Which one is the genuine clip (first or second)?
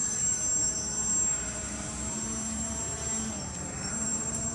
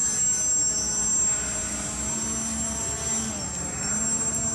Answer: second